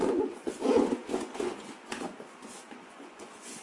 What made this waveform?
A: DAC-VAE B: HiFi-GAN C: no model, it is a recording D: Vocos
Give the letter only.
D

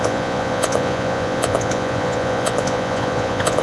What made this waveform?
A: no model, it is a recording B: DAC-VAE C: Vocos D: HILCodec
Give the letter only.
C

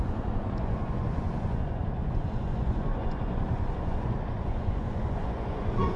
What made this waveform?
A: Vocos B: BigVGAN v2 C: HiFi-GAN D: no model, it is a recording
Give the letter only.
A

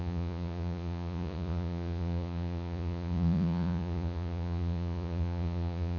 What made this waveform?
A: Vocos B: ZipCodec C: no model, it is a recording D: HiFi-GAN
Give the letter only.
A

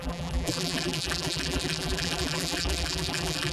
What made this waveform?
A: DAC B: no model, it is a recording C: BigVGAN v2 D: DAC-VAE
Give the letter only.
C